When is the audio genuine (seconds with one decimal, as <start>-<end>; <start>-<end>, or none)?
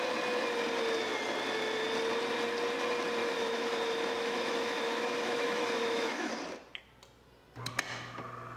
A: 0.0-3.2; 6.3-8.6